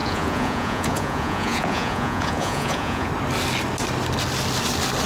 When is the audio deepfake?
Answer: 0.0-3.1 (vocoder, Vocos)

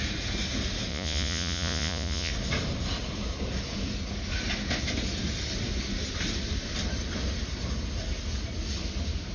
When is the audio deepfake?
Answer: 0.9-2.3 (vocoder, Vocos)

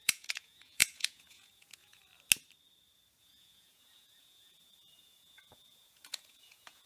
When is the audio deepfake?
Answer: 0.0-2.0 (vocoder, Vocos); 3.2-6.9

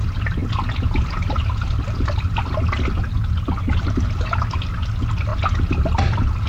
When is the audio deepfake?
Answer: none